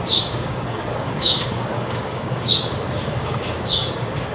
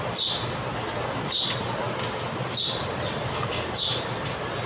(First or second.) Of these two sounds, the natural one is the second